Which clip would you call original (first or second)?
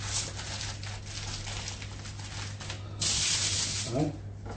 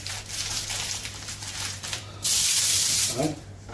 first